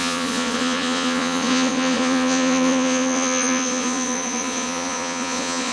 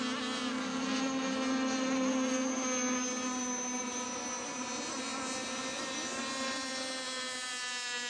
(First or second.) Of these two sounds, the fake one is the first